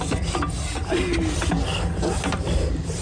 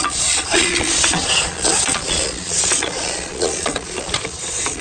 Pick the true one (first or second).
first